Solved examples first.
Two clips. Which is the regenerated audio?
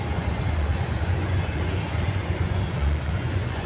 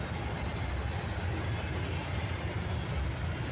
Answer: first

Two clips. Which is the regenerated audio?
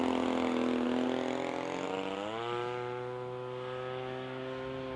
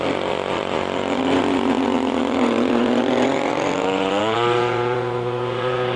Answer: second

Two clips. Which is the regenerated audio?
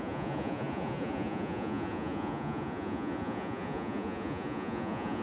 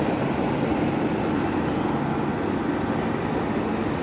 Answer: first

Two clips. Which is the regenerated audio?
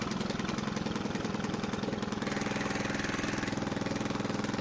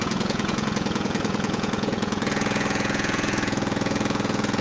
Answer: second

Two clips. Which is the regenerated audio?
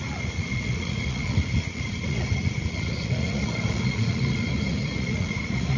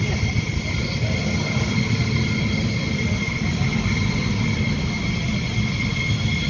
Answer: first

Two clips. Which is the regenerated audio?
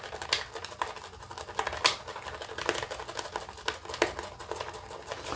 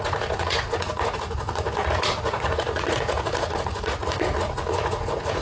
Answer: second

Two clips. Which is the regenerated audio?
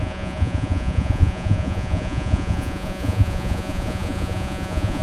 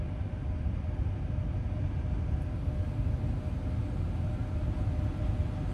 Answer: first